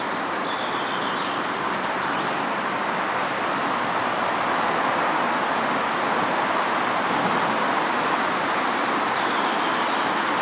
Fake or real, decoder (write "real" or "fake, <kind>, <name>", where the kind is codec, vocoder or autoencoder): real